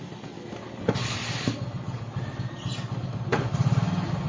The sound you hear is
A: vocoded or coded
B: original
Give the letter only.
B